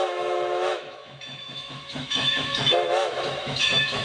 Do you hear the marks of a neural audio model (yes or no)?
yes